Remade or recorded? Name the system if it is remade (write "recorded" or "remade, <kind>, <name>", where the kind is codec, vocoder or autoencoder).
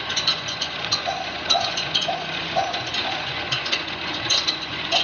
remade, vocoder, Vocos